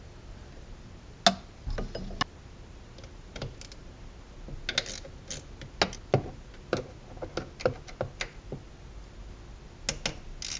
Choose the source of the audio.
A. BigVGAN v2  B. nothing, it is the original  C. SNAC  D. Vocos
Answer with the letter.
B